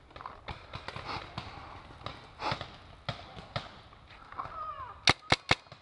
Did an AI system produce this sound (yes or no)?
no